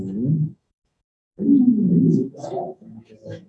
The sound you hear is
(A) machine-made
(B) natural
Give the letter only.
A